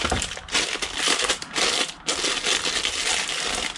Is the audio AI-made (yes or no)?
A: no